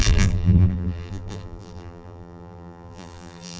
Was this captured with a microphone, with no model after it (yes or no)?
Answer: no